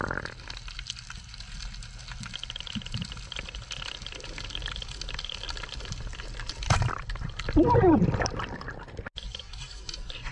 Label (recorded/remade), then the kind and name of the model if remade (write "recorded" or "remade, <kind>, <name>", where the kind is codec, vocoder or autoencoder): recorded